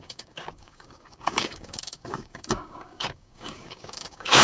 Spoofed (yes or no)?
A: yes